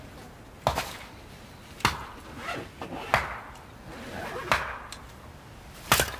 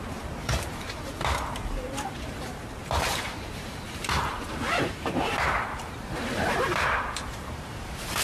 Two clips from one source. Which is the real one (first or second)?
first